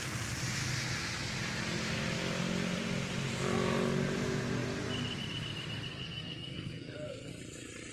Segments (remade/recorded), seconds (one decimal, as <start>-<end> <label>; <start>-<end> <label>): 0.0-5.9 recorded; 5.9-7.3 remade; 7.3-7.9 recorded